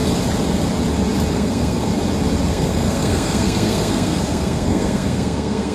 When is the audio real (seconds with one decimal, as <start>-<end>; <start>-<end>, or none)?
0.0-1.3; 1.9-2.5